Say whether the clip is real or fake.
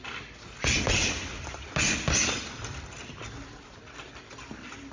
real